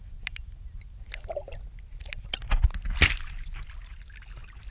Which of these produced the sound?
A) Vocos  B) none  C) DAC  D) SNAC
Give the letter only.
B